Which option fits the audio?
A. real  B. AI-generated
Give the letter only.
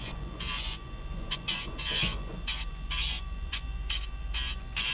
B